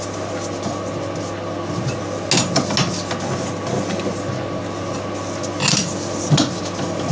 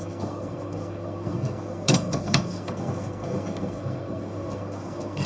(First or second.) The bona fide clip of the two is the first